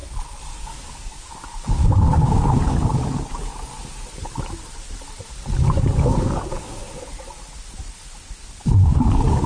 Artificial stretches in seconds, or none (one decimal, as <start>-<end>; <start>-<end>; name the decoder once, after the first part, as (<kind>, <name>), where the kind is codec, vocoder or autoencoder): 0.6-3.7 (codec, DAC); 5.7-6.8; 8.2-9.5